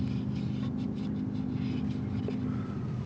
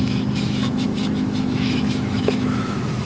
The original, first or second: first